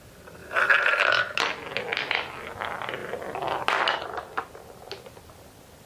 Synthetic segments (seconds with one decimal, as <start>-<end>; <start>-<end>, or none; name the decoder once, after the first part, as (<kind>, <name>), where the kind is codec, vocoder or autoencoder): none